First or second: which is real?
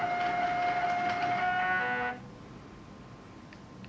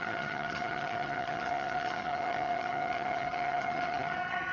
first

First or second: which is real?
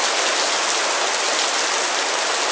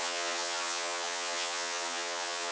first